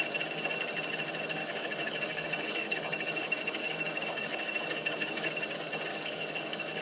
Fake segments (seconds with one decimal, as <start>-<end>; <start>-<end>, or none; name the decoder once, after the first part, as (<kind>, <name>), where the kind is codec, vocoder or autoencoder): 1.4-5.3 (codec, DAC); 5.9-6.8